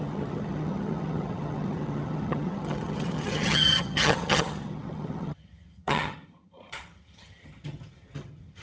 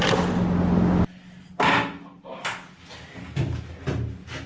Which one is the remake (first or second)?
first